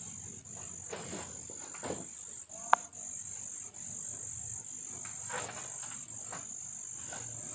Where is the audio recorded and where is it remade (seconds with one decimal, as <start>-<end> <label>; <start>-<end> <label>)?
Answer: 0.0-7.5 recorded